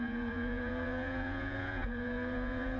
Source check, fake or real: fake